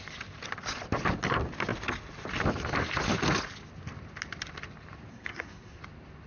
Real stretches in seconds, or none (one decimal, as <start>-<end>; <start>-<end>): 0.0-5.1; 5.8-6.3